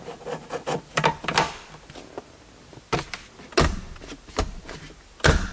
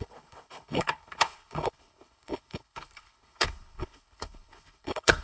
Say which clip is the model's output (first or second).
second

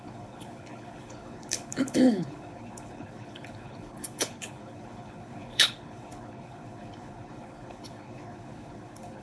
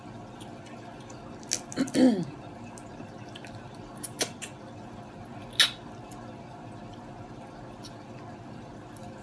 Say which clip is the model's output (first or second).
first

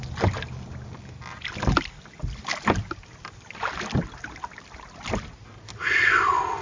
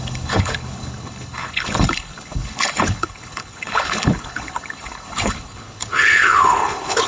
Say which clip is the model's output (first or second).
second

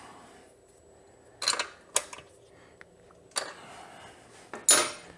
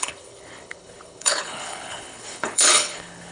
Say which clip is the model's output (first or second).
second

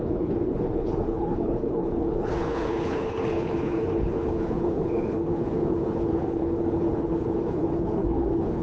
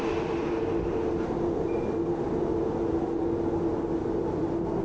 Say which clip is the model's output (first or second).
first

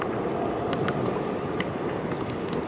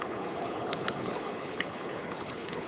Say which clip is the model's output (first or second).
second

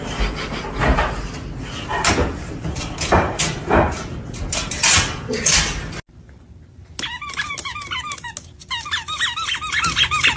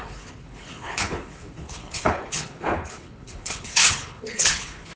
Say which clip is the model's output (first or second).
second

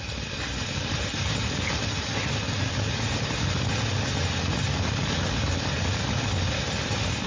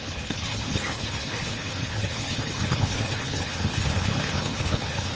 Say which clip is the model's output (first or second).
second